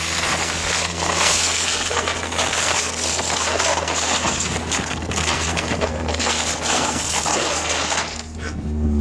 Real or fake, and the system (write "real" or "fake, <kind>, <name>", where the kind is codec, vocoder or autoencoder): fake, codec, SNAC